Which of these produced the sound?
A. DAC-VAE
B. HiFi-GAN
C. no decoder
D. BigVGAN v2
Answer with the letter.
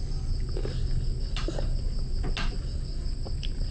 C